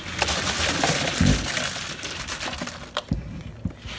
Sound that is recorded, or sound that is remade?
recorded